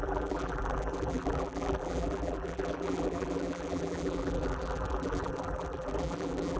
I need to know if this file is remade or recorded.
remade